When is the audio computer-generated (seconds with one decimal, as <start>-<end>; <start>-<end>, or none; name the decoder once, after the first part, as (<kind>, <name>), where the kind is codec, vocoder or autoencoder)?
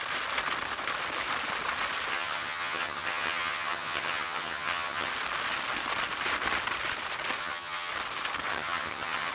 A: 2.1-5.1 (vocoder, HiFi-GAN); 7.4-7.9; 8.5-9.3